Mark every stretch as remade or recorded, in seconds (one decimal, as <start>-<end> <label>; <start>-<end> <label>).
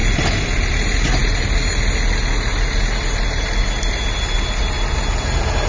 0.0-5.7 recorded